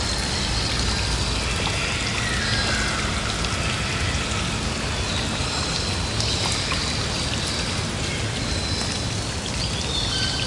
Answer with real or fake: real